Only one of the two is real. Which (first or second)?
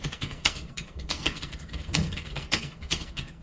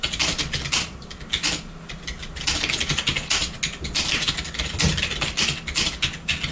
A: second